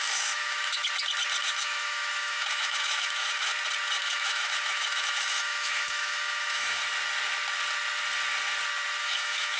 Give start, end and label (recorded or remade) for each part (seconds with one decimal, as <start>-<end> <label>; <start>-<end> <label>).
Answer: 0.0-0.8 remade; 0.8-1.4 recorded; 1.4-3.5 remade; 3.5-4.0 recorded; 4.0-6.8 remade; 6.8-9.0 recorded; 9.0-9.6 remade